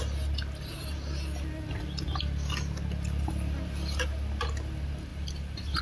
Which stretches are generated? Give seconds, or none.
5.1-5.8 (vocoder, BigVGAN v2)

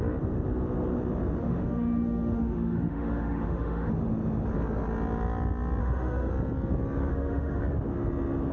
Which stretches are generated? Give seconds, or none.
1.4-3.9 (autoencoder, DAC-VAE); 5.8-6.3; 7.1-7.6

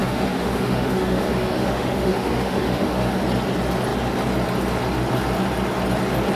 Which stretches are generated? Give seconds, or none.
0.0-3.2 (autoencoder, DAC-VAE)

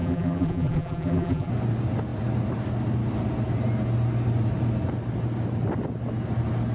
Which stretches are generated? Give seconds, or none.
0.0-1.5 (vocoder, BigVGAN v2)

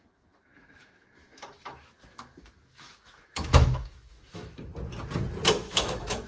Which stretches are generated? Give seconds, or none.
0.0-4.7 (autoencoder, DAC-VAE); 5.5-6.3

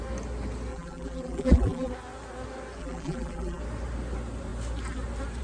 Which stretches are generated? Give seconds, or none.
0.7-1.9 (vocoder, BigVGAN v2); 2.8-3.6

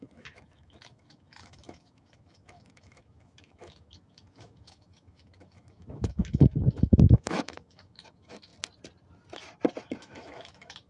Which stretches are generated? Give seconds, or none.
0.0-8.5 (autoencoder, DAC-VAE); 10.0-10.9